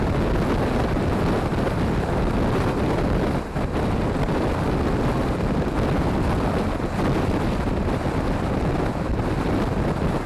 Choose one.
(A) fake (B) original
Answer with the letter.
A